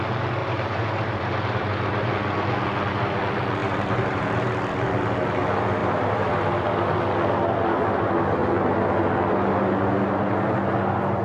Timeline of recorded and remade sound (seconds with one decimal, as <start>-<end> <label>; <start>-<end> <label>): 0.0-0.4 recorded; 0.4-2.1 remade; 2.1-3.6 recorded; 3.6-4.5 remade; 4.5-5.8 recorded; 5.8-6.3 remade; 6.3-11.2 recorded